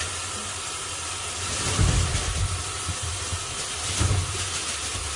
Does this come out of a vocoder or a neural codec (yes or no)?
no